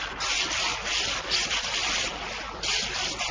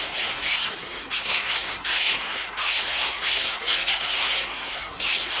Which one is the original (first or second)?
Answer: first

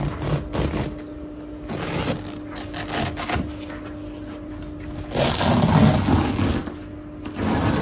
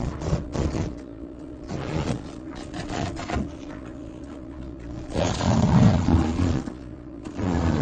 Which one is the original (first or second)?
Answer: first